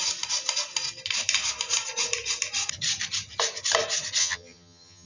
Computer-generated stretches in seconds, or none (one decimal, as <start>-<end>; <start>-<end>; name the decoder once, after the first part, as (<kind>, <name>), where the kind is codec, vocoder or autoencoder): 4.2-5.1 (vocoder, HiFi-GAN)

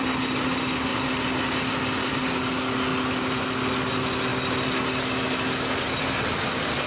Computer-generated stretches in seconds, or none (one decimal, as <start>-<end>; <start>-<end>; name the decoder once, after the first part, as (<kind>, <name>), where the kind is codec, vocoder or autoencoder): none

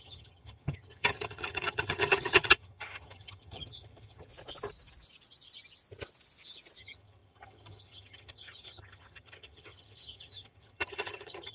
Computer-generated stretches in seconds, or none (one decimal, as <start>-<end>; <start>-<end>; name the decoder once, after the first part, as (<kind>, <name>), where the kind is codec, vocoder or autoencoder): 0.0-4.3 (vocoder, HiFi-GAN); 6.8-11.5

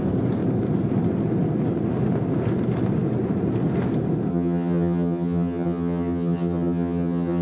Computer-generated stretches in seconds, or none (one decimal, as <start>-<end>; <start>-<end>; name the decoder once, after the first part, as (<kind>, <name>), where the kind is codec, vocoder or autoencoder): 4.3-7.4 (vocoder, HiFi-GAN)